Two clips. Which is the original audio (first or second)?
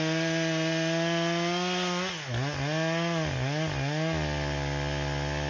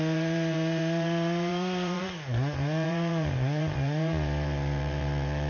first